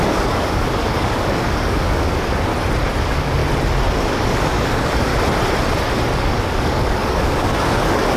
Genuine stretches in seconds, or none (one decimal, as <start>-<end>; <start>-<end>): 2.5-3.0; 3.4-4.0; 5.1-6.1